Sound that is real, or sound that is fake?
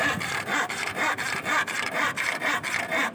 fake